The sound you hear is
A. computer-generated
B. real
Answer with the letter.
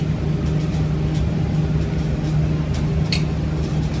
B